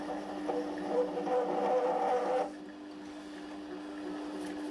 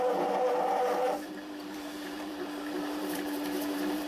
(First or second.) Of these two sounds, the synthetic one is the second